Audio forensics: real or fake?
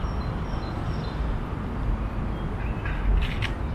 real